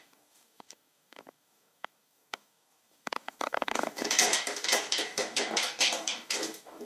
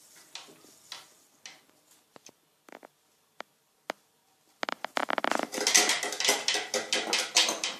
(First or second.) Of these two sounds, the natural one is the second